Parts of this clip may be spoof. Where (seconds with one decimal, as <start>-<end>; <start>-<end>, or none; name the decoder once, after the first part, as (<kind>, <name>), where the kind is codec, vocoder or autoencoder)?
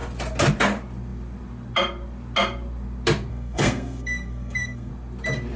3.3-4.9 (codec, SNAC)